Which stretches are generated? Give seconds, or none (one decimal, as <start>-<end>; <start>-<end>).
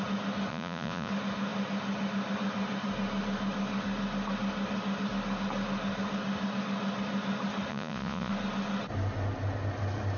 0.5-1.1; 7.7-8.3